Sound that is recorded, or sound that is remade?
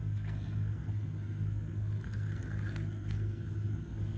remade